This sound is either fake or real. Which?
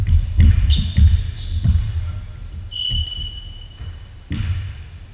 real